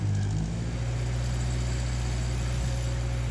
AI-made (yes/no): no